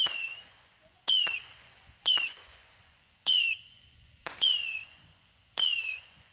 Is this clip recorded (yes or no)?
no